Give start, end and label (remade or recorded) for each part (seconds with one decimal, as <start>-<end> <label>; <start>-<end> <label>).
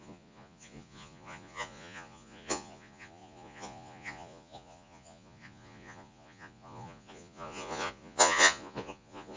0.0-9.4 remade